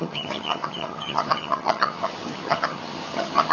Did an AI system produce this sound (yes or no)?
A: yes